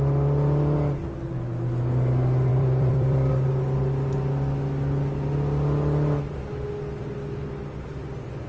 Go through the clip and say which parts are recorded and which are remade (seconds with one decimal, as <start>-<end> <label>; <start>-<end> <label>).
0.0-2.5 recorded; 2.5-3.3 remade; 3.3-8.5 recorded